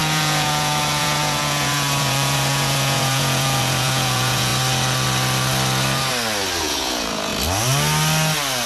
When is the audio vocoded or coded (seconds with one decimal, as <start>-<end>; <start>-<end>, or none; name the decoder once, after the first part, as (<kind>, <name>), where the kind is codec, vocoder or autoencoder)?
0.0-4.5 (vocoder, Vocos); 6.6-7.3